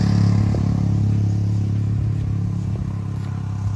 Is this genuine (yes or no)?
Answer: yes